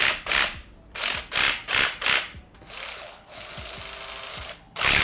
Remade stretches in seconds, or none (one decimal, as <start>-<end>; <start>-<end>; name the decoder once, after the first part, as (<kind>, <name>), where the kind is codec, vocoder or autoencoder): 2.9-3.8 (codec, HILCodec); 4.3-5.0